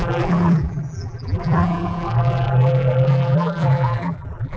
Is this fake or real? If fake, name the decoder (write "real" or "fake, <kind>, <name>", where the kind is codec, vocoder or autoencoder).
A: fake, vocoder, BigVGAN v2